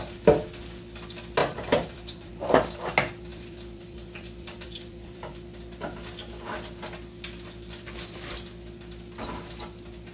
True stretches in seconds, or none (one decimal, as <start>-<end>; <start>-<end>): 0.0-1.4; 2.3-3.3; 5.3-10.1